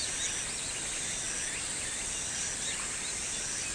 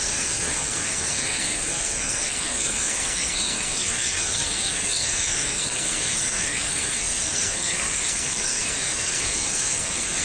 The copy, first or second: second